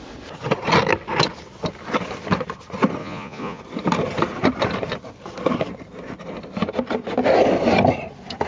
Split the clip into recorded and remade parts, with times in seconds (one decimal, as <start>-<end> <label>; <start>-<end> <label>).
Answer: 0.0-3.0 recorded; 3.0-3.6 remade; 3.6-8.5 recorded